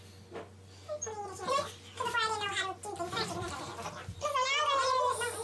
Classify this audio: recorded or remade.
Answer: recorded